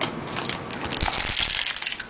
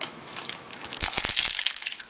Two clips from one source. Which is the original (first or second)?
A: first